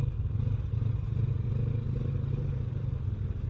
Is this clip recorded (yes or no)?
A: yes